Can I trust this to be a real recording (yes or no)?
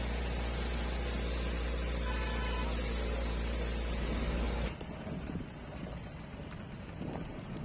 yes